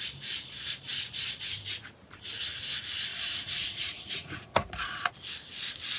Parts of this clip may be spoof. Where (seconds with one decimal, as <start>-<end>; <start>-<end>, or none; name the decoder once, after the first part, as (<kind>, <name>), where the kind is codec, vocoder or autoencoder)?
3.1-5.1 (vocoder, Vocos)